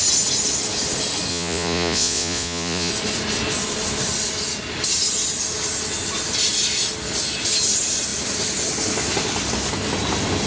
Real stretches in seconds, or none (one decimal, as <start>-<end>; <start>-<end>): 0.0-1.3; 2.9-10.5